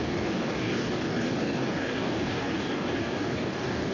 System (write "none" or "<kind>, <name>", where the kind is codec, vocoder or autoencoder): codec, DAC